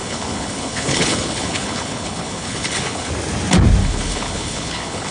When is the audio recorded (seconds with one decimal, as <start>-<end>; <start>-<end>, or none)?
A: 3.1-3.8